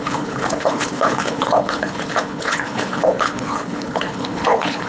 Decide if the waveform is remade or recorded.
remade